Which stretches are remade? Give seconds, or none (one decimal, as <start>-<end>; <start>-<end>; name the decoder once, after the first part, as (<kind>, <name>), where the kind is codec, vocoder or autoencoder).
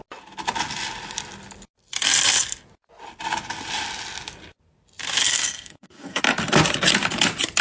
5.2-6.2 (codec, SNAC)